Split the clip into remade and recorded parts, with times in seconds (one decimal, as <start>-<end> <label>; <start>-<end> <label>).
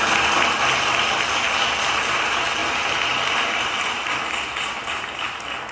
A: 0.0-5.7 recorded